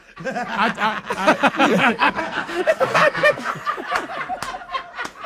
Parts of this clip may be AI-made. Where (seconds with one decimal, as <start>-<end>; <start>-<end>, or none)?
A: 1.8-3.5